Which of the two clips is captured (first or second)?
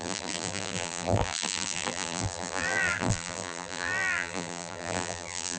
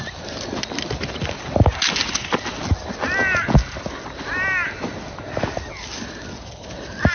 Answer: second